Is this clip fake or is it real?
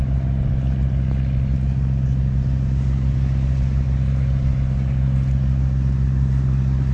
real